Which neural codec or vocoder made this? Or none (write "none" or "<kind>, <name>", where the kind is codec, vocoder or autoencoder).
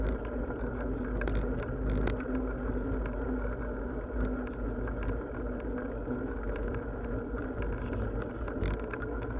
none